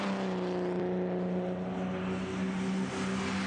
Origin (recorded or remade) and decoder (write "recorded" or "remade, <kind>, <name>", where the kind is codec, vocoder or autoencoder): recorded